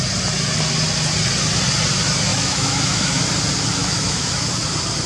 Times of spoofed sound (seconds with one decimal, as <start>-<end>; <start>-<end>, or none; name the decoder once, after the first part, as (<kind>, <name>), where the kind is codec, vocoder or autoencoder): 2.3-3.2 (autoencoder, DAC-VAE); 3.8-4.5